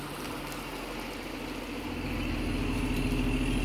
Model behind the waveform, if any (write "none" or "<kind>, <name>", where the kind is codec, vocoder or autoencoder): none